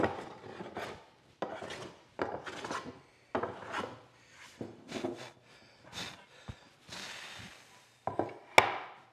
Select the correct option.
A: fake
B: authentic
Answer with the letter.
B